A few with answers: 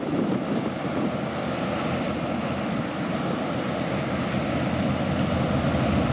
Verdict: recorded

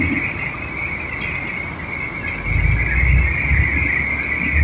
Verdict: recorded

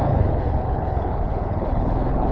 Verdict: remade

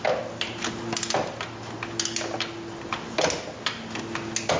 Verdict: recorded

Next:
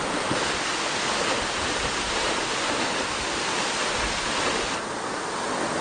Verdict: recorded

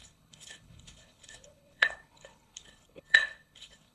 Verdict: remade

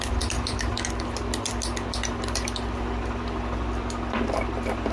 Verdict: recorded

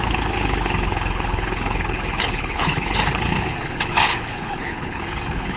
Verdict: remade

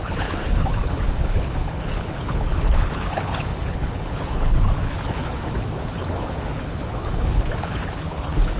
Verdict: remade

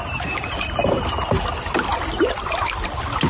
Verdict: recorded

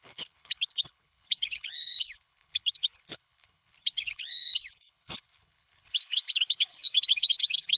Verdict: remade